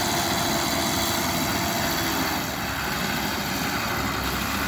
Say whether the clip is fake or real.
real